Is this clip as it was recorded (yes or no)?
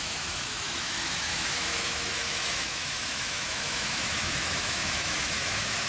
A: no